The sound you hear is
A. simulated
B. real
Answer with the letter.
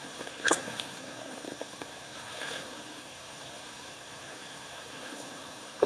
A